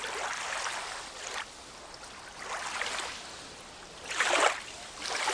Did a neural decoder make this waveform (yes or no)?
no